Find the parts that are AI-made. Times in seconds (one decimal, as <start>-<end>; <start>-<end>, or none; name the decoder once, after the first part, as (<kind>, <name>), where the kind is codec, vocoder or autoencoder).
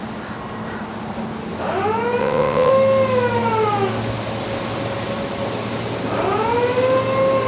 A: 2.2-2.7 (vocoder, WaveNeXt)